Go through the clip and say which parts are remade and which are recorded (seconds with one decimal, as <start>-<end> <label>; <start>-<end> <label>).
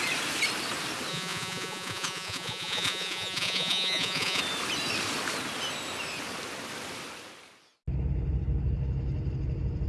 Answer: 0.0-1.1 recorded; 1.1-4.4 remade; 4.4-9.9 recorded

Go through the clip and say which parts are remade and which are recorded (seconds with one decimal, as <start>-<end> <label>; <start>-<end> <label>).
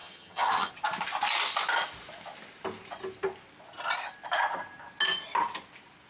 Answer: 0.0-0.7 remade; 0.7-6.1 recorded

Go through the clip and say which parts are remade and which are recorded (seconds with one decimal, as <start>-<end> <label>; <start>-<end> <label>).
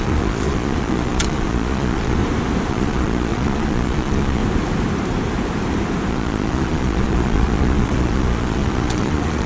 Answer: 0.0-2.2 remade; 2.2-2.7 recorded; 2.7-4.4 remade; 4.4-6.1 recorded; 6.1-9.5 remade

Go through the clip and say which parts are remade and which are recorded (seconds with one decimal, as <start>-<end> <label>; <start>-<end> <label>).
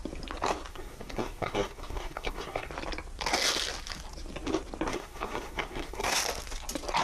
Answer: 0.0-0.7 recorded; 0.7-2.7 remade; 2.7-4.9 recorded; 4.9-6.2 remade; 6.2-7.0 recorded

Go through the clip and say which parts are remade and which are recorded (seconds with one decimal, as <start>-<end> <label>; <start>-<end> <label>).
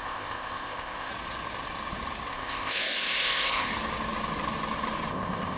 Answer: 0.0-1.1 remade; 1.1-2.3 recorded; 2.3-3.7 remade; 3.7-5.1 recorded; 5.1-5.6 remade